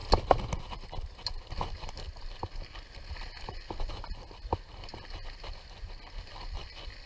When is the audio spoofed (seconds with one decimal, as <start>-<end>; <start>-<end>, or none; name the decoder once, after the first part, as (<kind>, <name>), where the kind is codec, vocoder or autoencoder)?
none